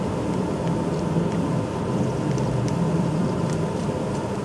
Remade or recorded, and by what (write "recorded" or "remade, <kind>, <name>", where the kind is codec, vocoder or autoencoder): remade, vocoder, BigVGAN v2